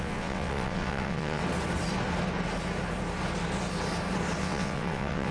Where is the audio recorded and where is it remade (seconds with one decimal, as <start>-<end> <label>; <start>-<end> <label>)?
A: 0.0-1.4 remade; 1.4-4.4 recorded; 4.4-5.3 remade

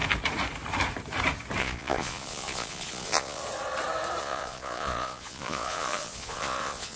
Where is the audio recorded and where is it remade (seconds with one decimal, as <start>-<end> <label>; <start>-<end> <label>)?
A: 0.0-1.6 recorded; 1.6-3.4 remade; 3.4-4.2 recorded; 4.2-7.0 remade

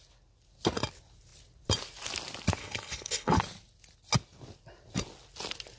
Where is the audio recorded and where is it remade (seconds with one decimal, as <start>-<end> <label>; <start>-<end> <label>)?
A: 0.0-2.6 recorded; 2.6-3.4 remade; 3.4-5.8 recorded

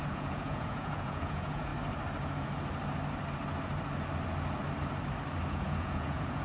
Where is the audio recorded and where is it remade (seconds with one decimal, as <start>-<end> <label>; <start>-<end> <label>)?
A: 0.0-1.7 remade; 1.7-5.5 recorded; 5.5-6.4 remade

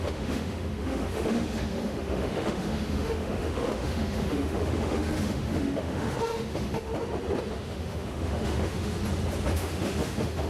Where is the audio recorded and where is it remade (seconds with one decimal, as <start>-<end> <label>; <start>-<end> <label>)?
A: 0.0-6.9 remade; 6.9-7.5 recorded; 7.5-9.0 remade; 9.0-9.5 recorded; 9.5-10.5 remade